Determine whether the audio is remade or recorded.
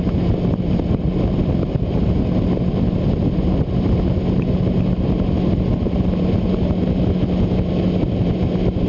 recorded